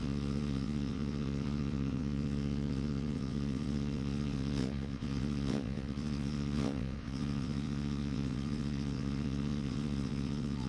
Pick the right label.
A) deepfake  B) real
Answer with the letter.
A